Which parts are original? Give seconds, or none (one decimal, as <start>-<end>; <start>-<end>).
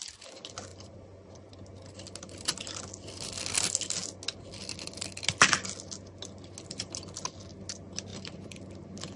0.0-0.7; 1.5-8.1; 8.6-9.2